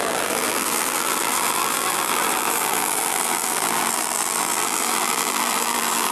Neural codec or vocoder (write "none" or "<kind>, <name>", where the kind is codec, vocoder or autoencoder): vocoder, BigVGAN v2